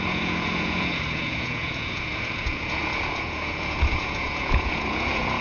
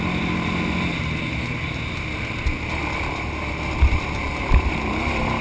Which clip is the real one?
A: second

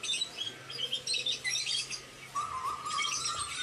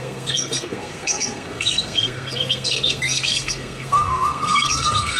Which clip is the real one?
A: first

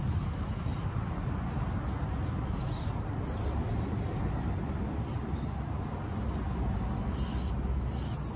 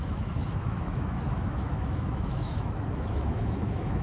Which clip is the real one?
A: first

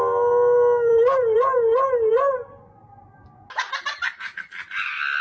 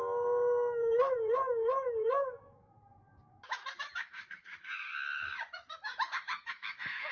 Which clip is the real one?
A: first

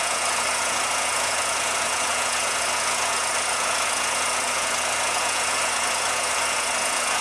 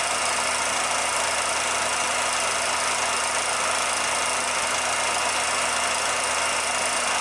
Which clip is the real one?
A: second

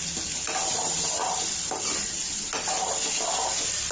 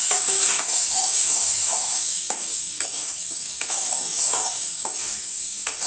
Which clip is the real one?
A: first